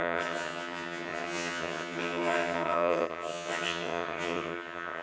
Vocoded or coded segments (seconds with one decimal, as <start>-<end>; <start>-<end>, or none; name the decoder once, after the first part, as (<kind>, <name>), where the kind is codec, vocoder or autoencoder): 0.0-5.0 (vocoder, HiFi-GAN)